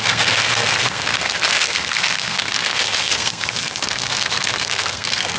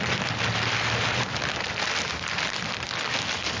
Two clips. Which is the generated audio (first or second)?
first